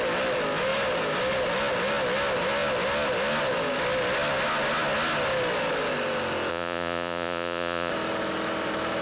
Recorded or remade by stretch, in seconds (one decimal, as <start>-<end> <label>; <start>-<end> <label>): 0.0-6.5 recorded; 6.5-7.9 remade; 7.9-9.0 recorded

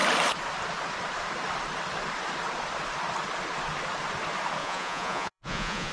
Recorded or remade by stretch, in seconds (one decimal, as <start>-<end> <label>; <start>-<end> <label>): 0.0-4.6 recorded; 4.6-5.9 remade

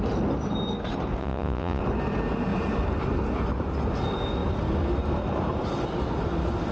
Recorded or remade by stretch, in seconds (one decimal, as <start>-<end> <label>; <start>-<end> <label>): 0.0-1.2 recorded; 1.2-1.8 remade; 1.8-6.7 recorded

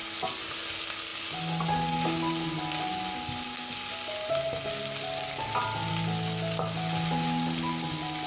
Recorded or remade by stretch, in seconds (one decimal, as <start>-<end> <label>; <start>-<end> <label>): 0.0-8.3 recorded

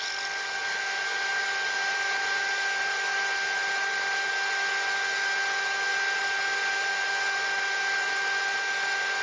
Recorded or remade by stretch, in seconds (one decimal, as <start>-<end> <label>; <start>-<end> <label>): 0.0-9.2 recorded